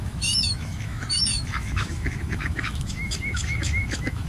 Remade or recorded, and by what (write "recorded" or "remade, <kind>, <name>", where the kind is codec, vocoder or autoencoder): remade, autoencoder, DAC-VAE